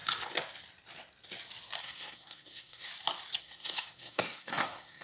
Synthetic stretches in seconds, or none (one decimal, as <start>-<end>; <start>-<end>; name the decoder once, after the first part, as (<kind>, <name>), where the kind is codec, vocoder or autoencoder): 1.8-2.9 (codec, SNAC); 3.4-5.0